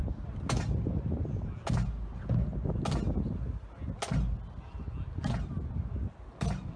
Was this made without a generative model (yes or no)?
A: yes